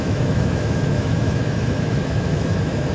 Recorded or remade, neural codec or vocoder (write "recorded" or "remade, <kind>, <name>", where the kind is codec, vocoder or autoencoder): remade, autoencoder, DAC-VAE